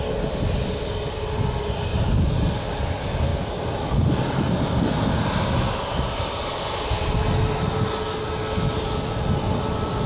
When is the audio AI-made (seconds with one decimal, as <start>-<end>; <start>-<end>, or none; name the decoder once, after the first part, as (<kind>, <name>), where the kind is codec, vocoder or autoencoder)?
none